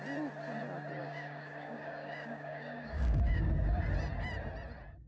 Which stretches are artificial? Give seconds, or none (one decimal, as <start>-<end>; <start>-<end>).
1.0-3.5